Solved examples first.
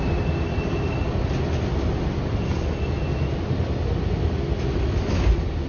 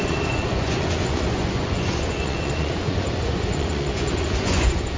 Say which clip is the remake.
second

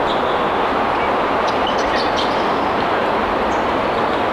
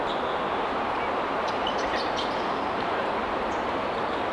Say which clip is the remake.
second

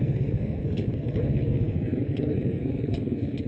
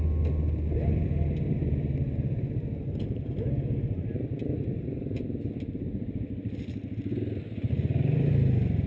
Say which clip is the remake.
first